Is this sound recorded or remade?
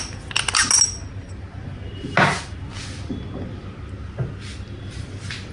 recorded